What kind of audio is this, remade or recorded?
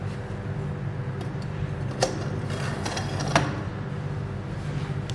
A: recorded